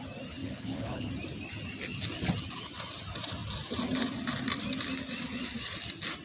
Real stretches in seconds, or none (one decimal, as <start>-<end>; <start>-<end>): 0.0-0.4; 1.1-6.2